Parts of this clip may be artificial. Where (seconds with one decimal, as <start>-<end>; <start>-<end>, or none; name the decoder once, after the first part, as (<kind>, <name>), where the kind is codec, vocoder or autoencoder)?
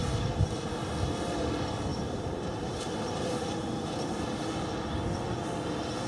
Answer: 0.0-0.7 (vocoder, BigVGAN v2); 1.9-4.1